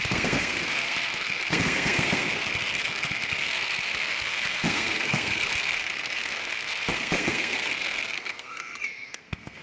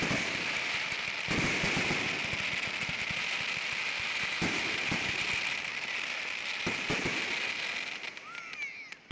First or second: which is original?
second